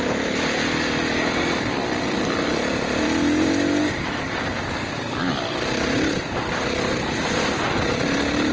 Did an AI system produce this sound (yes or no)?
yes